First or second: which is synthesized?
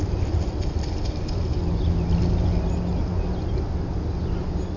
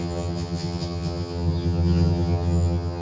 second